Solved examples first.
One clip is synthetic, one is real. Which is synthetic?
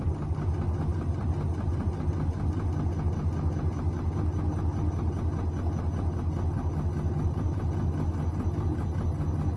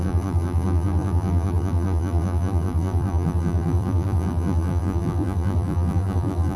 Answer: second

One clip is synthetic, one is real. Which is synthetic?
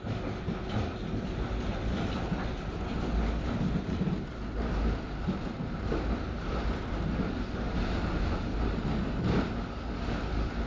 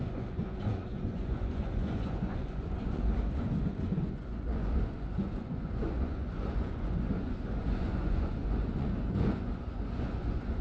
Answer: second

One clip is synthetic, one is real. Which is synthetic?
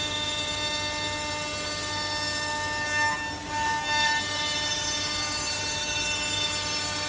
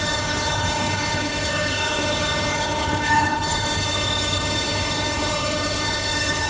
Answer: second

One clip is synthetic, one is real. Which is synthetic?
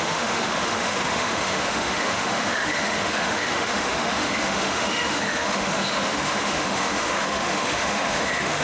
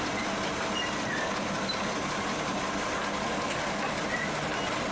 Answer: first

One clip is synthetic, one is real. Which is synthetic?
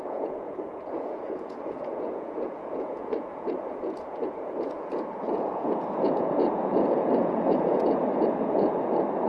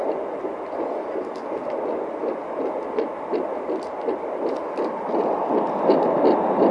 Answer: first